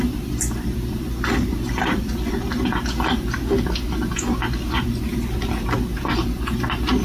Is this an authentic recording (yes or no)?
yes